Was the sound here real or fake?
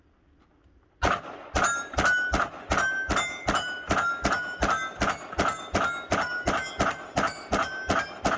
real